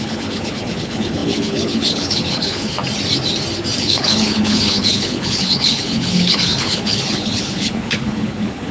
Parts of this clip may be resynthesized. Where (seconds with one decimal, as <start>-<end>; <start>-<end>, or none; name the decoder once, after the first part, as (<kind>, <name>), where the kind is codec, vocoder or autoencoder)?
0.0-2.8 (codec, HILCodec); 3.8-8.7